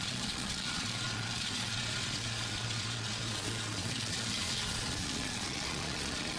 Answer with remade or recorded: remade